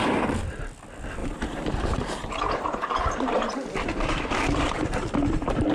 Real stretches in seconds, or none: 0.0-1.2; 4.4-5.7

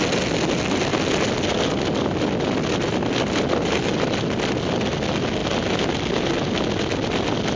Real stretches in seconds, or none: 0.0-7.6

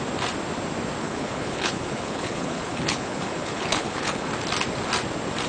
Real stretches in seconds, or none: 0.0-1.0; 4.3-5.5

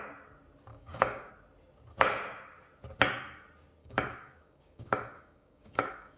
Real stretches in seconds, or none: 0.0-0.7; 1.3-3.8